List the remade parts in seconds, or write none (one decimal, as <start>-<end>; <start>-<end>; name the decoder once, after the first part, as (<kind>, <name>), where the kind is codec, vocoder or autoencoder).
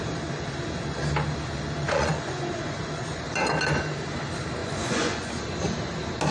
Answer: 1.8-3.2 (vocoder, Vocos); 4.6-5.3